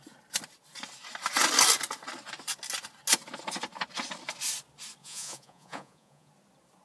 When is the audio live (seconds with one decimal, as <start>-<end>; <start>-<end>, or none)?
0.0-5.0; 6.3-6.8